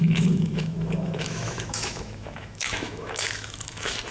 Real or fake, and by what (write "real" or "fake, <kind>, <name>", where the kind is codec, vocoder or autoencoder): fake, autoencoder, DAC-VAE